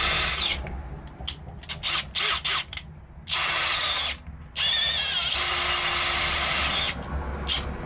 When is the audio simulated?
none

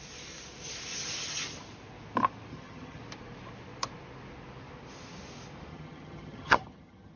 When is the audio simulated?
2.5-3.0 (vocoder, HiFi-GAN); 5.7-7.2

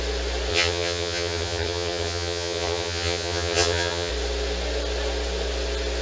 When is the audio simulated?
0.5-4.1 (vocoder, HiFi-GAN)

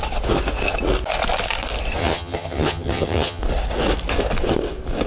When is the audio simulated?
2.0-3.4 (vocoder, HiFi-GAN)

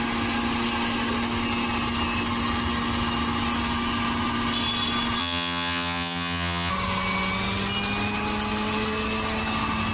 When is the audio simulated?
5.2-6.7 (vocoder, HiFi-GAN)

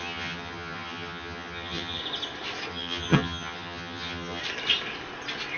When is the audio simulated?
0.0-2.0 (vocoder, HiFi-GAN); 2.7-4.4

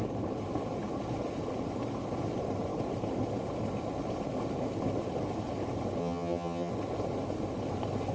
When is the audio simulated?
6.0-6.7 (vocoder, HiFi-GAN)

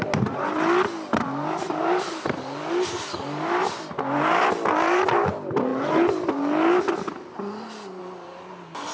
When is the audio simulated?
none